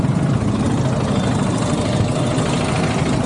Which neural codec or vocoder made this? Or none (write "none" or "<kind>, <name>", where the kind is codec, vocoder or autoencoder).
none